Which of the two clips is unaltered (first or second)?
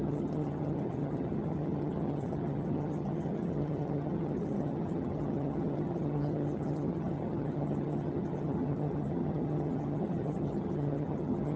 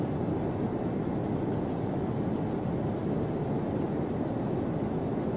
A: second